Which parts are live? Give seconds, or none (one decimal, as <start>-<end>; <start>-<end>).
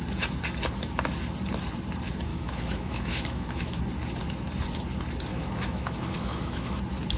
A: 0.0-2.3; 3.8-5.3; 6.8-7.2